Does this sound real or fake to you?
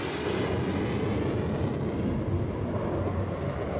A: real